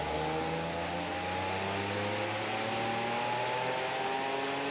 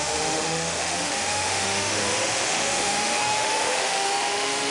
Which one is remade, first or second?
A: second